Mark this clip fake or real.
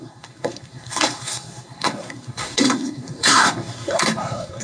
fake